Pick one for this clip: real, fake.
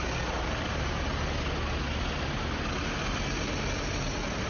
real